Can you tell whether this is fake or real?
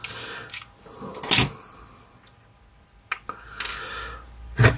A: real